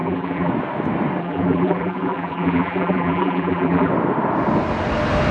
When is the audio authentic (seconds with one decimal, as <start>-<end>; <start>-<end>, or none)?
0.5-1.2; 3.9-5.3